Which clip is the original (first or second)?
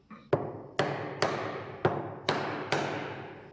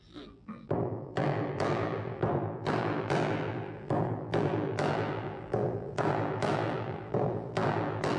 first